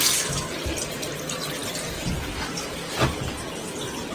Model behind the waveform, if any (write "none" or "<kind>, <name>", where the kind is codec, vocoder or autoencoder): none